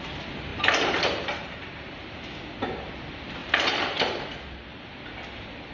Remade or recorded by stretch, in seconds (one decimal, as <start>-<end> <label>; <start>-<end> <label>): 0.0-0.5 recorded; 0.5-2.4 remade; 2.4-3.4 recorded; 3.4-4.2 remade; 4.2-5.7 recorded